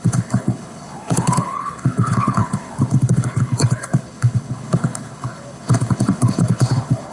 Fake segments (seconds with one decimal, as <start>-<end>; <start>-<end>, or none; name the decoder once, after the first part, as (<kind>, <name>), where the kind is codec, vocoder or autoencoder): 0.0-7.1 (codec, HILCodec)